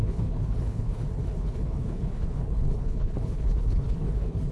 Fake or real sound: fake